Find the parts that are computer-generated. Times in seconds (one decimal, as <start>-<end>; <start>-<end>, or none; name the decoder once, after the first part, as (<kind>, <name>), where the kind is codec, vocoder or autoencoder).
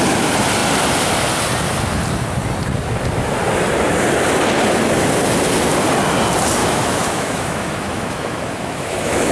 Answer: 6.6-9.3 (autoencoder, DAC-VAE)